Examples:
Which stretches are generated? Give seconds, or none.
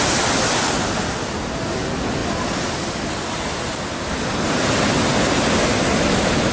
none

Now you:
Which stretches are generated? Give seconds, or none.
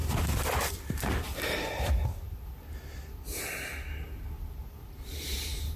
0.0-0.7 (vocoder, BigVGAN v2); 5.1-5.8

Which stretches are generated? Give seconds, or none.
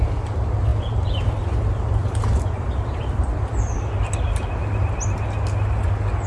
0.7-3.5 (vocoder, BigVGAN v2)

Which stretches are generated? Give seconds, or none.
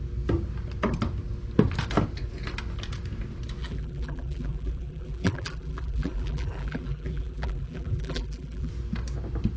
3.6-8.7 (vocoder, BigVGAN v2)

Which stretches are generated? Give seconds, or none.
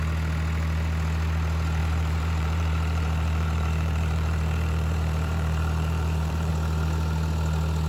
1.8-6.5 (vocoder, BigVGAN v2)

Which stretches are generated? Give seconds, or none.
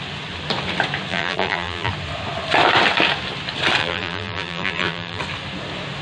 1.1-1.9 (vocoder, BigVGAN v2); 3.8-5.2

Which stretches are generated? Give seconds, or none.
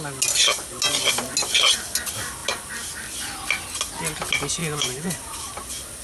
4.6-5.4 (vocoder, BigVGAN v2)